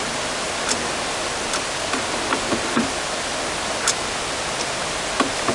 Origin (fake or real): real